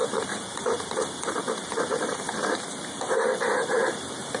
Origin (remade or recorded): remade